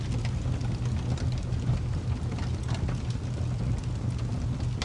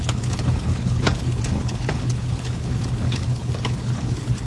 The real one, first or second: first